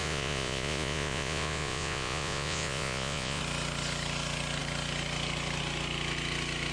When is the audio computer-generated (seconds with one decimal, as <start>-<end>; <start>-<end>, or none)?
0.0-3.4